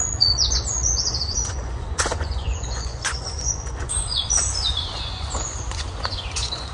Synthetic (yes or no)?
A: yes